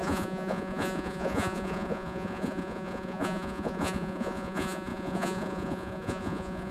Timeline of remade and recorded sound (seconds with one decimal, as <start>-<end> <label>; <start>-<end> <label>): 0.0-6.7 remade